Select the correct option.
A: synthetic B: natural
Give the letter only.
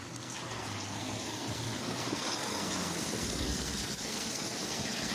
A